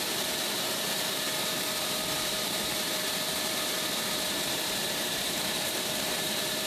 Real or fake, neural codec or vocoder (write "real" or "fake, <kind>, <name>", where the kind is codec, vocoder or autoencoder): fake, vocoder, BigVGAN v2